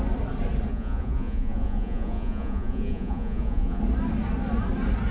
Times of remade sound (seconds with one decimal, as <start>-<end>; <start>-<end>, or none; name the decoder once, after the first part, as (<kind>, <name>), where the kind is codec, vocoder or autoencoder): 0.7-3.8 (vocoder, Vocos)